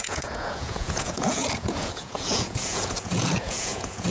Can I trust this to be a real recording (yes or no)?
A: no